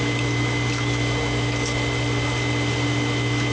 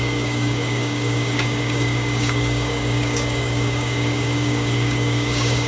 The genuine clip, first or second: first